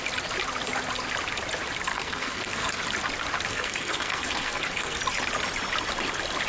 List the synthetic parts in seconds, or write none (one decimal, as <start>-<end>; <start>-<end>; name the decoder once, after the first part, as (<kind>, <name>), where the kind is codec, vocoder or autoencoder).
1.9-2.8 (codec, SNAC); 3.5-5.0